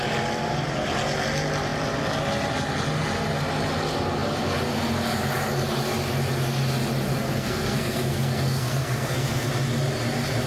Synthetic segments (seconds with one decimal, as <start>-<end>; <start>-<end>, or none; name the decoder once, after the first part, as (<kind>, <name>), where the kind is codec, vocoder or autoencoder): 7.1-9.5 (codec, SNAC)